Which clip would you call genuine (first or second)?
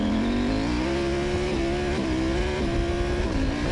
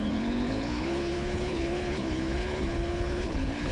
first